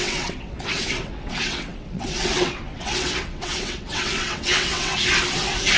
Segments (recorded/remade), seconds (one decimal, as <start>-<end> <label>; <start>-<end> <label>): 0.0-4.9 remade; 4.9-5.8 recorded